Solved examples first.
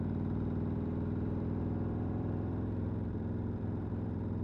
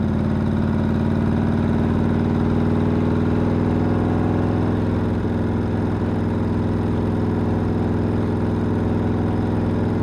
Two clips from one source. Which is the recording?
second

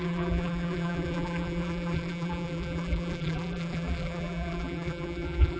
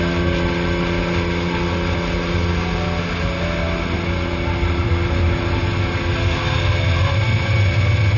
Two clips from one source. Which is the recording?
second